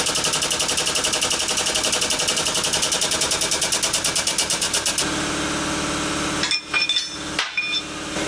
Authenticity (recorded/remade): recorded